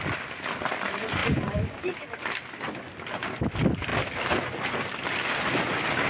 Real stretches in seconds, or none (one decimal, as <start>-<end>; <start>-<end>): 0.0-1.2; 2.0-3.9; 5.5-6.1